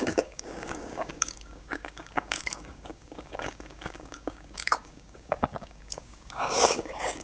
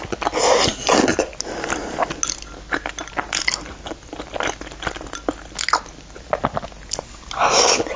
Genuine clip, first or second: second